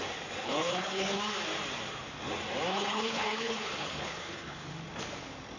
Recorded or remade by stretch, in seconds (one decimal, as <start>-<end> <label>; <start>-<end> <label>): 0.0-0.4 recorded; 0.4-1.2 remade; 1.2-2.7 recorded; 2.7-4.7 remade; 4.7-5.6 recorded